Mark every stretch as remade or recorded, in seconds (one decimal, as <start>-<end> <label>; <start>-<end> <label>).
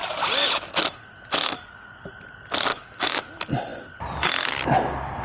0.0-2.7 recorded; 2.7-3.2 remade; 3.2-5.2 recorded